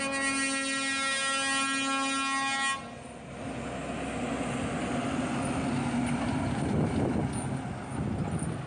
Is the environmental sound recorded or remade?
recorded